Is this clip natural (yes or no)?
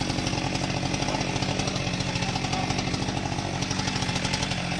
yes